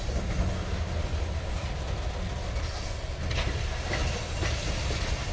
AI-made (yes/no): no